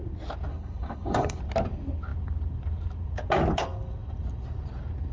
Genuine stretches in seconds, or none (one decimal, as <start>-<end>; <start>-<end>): 0.0-0.5; 1.4-5.1